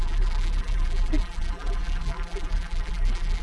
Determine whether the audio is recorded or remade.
remade